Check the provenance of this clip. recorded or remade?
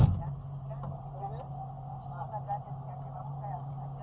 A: recorded